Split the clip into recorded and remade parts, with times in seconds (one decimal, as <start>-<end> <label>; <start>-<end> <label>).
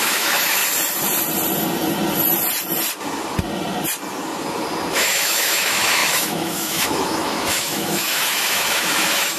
0.0-0.6 remade; 0.6-4.9 recorded; 4.9-9.4 remade